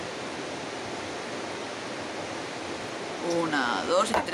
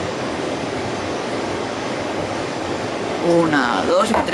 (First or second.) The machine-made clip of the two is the second